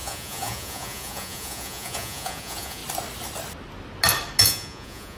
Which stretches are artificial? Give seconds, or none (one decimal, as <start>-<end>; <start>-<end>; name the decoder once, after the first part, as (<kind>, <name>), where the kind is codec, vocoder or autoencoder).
0.0-2.8 (vocoder, Vocos); 4.4-5.2